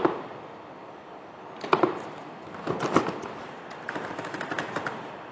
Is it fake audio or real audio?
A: real